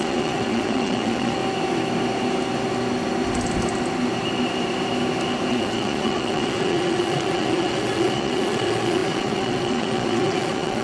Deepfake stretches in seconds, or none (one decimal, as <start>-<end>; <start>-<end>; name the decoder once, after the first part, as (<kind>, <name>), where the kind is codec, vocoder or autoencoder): 0.0-1.4 (vocoder, Vocos); 5.5-10.8